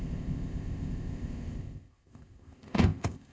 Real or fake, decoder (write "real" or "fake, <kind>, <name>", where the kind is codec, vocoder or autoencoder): fake, codec, ZipCodec